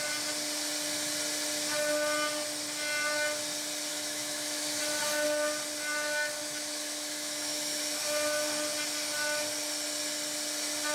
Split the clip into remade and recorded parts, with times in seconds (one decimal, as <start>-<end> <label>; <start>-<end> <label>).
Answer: 0.0-3.9 recorded; 3.9-4.8 remade; 4.8-6.4 recorded; 6.4-8.0 remade; 8.0-10.9 recorded

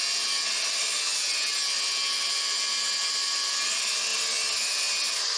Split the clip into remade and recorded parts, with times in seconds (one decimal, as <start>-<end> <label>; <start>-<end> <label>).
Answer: 0.0-5.4 recorded

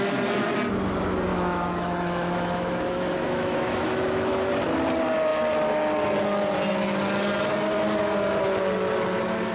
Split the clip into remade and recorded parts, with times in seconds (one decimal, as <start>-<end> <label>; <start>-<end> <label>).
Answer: 0.0-1.3 recorded; 1.3-4.5 remade; 4.5-9.5 recorded

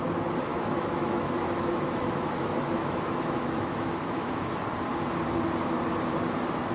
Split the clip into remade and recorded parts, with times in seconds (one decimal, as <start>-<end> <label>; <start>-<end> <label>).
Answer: 0.0-0.5 recorded; 0.5-4.5 remade; 4.5-6.7 recorded

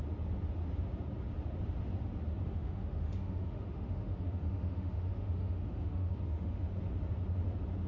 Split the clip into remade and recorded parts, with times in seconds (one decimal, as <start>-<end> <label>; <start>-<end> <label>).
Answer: 0.0-2.5 recorded; 2.5-6.6 remade; 6.6-7.9 recorded

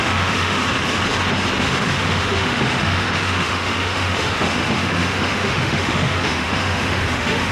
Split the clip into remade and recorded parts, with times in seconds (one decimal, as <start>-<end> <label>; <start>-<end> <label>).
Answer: 0.0-0.6 remade; 0.6-1.6 recorded; 1.6-7.5 remade

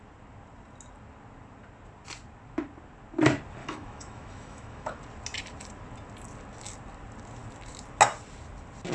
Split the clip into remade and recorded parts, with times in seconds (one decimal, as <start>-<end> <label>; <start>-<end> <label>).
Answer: 0.0-3.6 recorded; 3.6-5.0 remade; 5.0-8.9 recorded

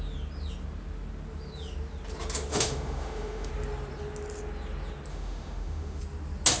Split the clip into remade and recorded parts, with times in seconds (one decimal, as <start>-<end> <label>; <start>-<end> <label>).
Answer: 0.0-2.5 recorded; 2.5-3.5 remade; 3.5-5.1 recorded; 5.1-6.0 remade; 6.0-6.6 recorded